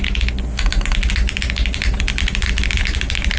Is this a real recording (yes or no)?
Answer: yes